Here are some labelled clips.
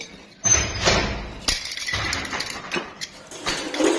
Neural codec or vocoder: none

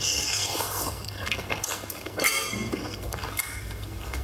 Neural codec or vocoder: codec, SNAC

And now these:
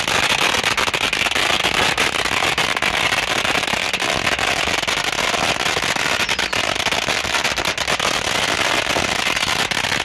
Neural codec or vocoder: none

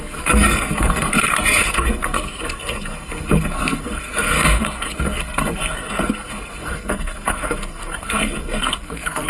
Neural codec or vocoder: codec, SNAC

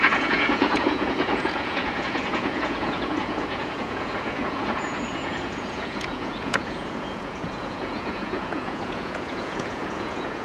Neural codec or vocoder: vocoder, Vocos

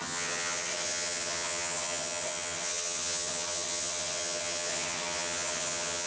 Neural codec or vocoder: vocoder, HiFi-GAN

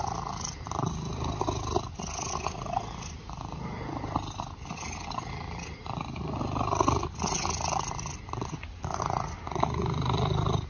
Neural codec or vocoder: none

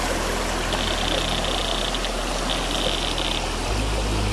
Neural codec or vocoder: none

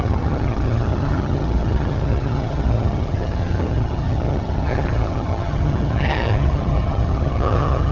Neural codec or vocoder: vocoder, HiFi-GAN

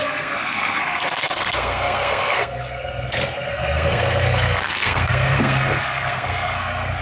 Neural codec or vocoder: codec, SNAC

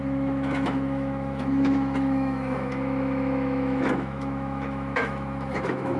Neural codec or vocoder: autoencoder, DAC-VAE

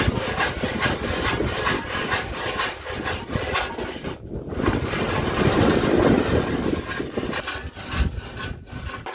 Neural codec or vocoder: none